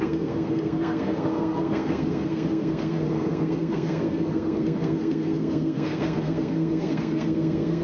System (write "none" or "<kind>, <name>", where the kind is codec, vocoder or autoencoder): codec, SNAC